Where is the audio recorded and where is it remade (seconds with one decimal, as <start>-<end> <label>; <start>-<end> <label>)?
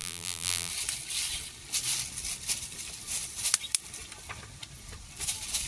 0.0-0.7 remade; 0.7-5.7 recorded